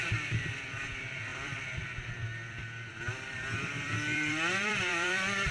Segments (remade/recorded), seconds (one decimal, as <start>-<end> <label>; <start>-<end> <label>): 0.0-5.5 remade